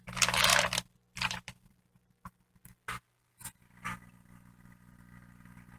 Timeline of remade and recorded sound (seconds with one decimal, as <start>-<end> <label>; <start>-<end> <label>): 0.0-0.5 recorded; 0.5-2.6 remade; 2.6-5.8 recorded